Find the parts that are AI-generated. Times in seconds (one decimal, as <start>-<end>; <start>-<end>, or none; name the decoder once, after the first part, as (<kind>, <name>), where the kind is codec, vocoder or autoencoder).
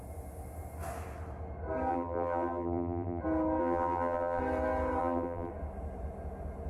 1.9-3.2 (vocoder, BigVGAN v2); 3.6-4.4; 5.0-5.5